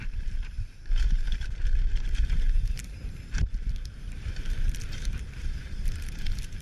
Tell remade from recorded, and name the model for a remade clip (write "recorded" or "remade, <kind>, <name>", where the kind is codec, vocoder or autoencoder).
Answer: remade, vocoder, BigVGAN v2